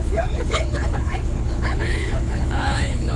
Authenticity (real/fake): fake